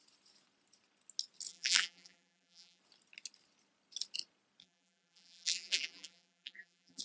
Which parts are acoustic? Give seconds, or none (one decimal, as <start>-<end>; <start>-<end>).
0.0-1.5; 2.8-4.6